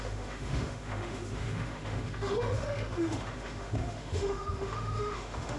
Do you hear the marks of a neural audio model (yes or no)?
yes